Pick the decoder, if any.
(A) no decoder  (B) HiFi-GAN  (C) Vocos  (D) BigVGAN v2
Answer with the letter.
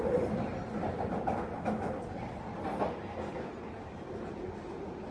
A